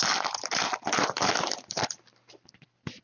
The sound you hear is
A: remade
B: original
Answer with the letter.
B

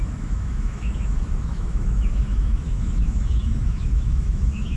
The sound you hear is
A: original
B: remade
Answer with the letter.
B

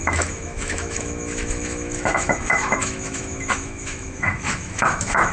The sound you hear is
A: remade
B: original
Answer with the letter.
A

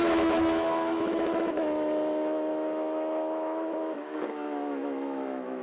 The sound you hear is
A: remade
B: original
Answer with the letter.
A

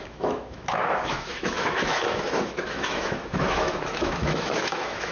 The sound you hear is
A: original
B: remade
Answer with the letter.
B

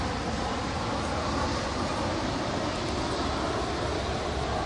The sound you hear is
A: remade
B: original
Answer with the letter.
B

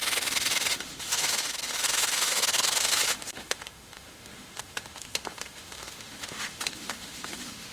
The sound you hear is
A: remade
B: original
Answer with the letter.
A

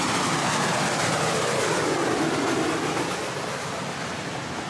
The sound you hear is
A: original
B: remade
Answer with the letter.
A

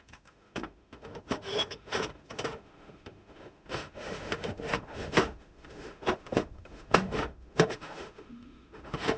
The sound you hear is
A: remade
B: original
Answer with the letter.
A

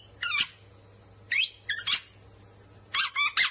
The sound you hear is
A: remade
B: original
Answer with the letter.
B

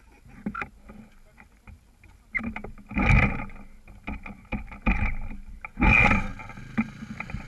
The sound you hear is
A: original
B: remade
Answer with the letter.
A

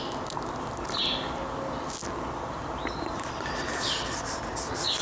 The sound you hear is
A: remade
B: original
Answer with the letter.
B